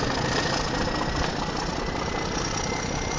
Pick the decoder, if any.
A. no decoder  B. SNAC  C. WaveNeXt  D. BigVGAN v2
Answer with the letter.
A